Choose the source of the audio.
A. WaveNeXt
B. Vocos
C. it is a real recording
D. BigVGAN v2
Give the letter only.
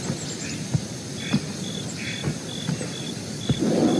C